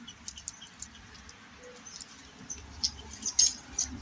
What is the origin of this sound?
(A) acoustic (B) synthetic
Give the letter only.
A